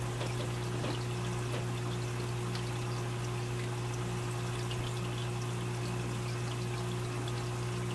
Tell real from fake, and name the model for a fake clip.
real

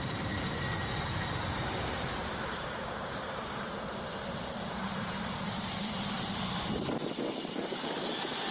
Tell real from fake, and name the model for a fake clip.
fake, vocoder, BigVGAN v2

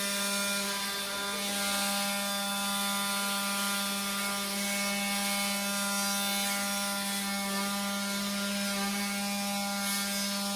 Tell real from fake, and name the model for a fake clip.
real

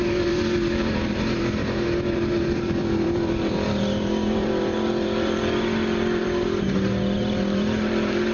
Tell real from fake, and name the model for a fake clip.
fake, vocoder, BigVGAN v2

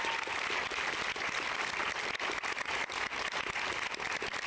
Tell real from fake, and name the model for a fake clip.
real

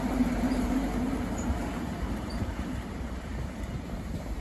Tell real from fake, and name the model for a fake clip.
fake, vocoder, BigVGAN v2